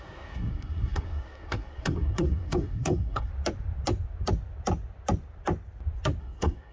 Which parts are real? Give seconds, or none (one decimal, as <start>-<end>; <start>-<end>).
3.3-6.2